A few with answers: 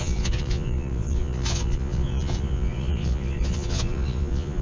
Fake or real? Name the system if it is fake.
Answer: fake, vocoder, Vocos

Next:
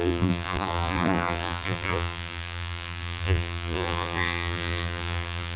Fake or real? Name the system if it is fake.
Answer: fake, vocoder, BigVGAN v2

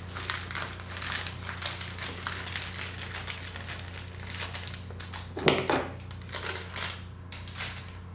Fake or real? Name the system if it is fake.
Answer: real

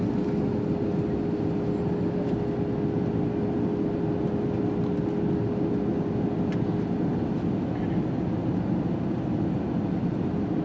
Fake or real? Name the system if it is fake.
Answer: real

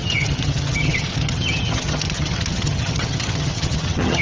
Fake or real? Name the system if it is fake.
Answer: fake, vocoder, HiFi-GAN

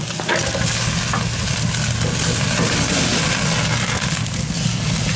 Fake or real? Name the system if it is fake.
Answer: real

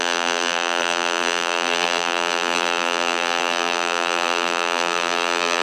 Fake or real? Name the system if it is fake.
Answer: fake, vocoder, BigVGAN v2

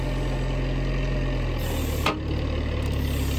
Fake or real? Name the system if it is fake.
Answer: real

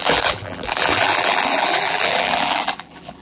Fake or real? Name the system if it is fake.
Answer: fake, vocoder, BigVGAN v2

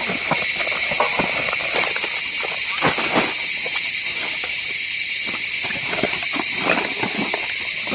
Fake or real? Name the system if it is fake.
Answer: fake, vocoder, BigVGAN v2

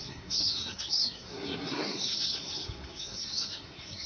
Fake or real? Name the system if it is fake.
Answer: fake, codec, SNAC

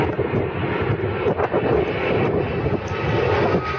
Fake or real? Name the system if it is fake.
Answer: real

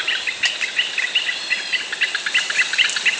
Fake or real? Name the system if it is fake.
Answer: real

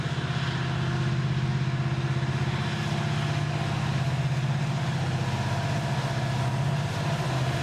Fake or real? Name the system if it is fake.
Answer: real